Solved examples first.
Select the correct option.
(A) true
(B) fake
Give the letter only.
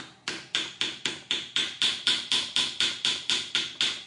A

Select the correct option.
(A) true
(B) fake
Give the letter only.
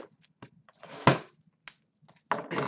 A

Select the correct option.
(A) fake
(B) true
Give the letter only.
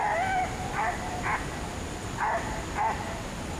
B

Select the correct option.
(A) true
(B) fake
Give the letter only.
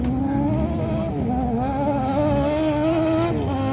A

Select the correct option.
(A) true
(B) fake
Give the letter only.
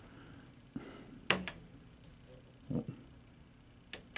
A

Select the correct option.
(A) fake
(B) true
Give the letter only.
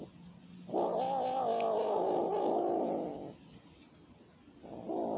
B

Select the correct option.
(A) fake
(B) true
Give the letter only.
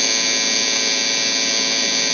B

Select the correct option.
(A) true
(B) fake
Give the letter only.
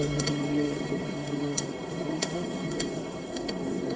B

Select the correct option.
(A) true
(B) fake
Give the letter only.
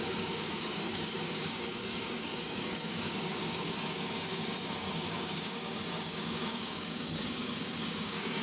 B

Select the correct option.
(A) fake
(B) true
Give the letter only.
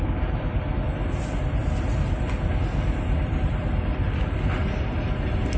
B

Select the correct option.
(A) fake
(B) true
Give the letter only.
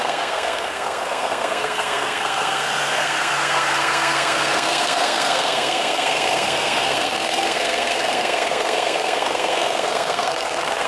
A